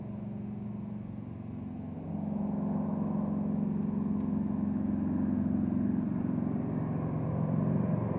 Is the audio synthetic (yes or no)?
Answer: no